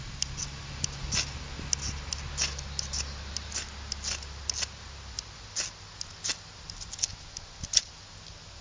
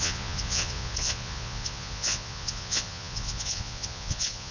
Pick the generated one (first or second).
second